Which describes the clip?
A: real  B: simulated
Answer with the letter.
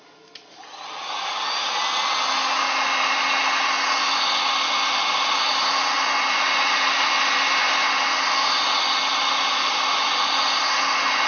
A